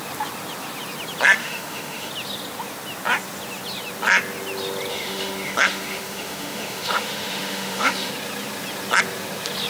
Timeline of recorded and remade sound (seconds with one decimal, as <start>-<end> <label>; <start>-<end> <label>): 0.0-1.4 recorded; 1.4-2.1 remade; 2.1-4.9 recorded; 4.9-8.1 remade; 8.1-9.7 recorded